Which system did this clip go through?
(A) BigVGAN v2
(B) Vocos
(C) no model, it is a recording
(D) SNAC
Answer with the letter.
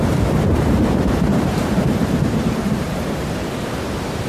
A